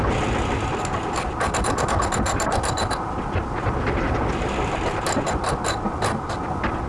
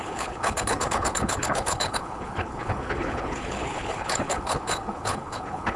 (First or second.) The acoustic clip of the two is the first